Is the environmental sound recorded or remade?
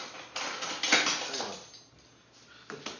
recorded